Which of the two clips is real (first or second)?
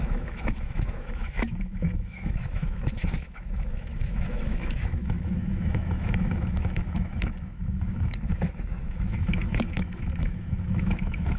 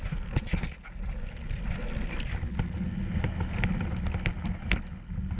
second